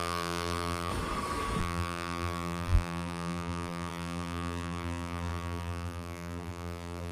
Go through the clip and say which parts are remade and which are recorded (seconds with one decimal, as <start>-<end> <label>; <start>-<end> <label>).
0.0-0.9 remade; 0.9-1.6 recorded; 1.6-7.1 remade